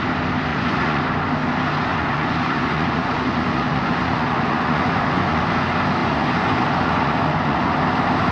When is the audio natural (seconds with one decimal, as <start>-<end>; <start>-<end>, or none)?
0.0-0.5; 1.0-1.9; 5.5-6.0; 7.7-8.3